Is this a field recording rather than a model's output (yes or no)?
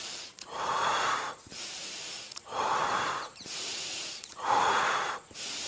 no